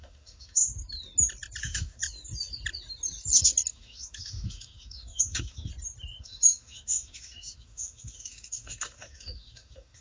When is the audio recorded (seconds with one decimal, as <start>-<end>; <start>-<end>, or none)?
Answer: 0.6-1.6; 2.0-3.7; 5.7-6.2